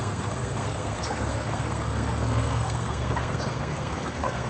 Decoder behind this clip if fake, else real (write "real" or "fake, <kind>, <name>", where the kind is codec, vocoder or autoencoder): fake, codec, SNAC